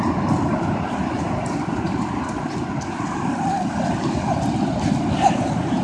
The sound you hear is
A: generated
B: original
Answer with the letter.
B